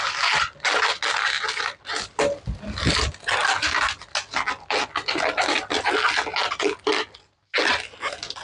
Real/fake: real